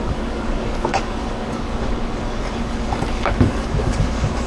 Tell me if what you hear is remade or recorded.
remade